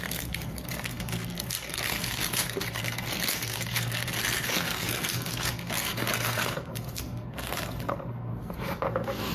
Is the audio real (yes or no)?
no